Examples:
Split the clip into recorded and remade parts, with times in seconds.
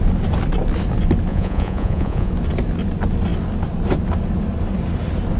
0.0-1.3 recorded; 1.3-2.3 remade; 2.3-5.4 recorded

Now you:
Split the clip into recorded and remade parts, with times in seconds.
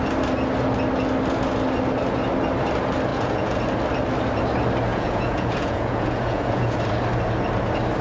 0.0-3.1 recorded; 3.1-3.6 remade; 3.6-4.9 recorded; 4.9-6.8 remade; 6.8-8.0 recorded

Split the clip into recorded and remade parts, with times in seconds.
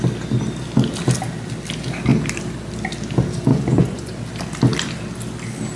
0.0-3.5 recorded; 3.5-4.1 remade; 4.1-5.8 recorded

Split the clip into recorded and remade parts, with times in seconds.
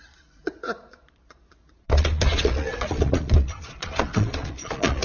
0.0-5.0 remade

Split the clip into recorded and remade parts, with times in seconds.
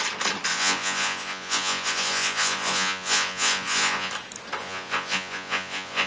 0.0-0.5 recorded; 0.5-4.1 remade; 4.1-4.6 recorded; 4.6-6.1 remade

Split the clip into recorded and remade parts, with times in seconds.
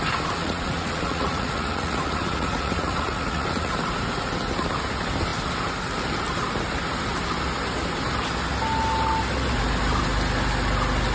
0.0-0.4 recorded; 0.4-3.7 remade; 3.7-11.1 recorded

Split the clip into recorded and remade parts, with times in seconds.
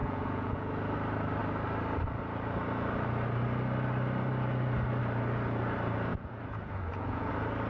0.0-0.7 remade; 0.7-6.1 recorded; 6.1-7.3 remade; 7.3-7.7 recorded